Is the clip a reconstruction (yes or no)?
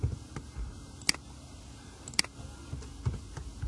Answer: no